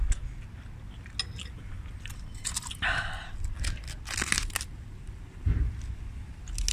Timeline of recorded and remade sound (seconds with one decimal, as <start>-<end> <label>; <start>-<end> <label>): 0.0-2.4 recorded; 2.4-5.3 remade; 5.3-6.7 recorded